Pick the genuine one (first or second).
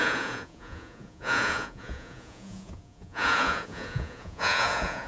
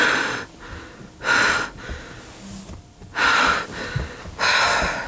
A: second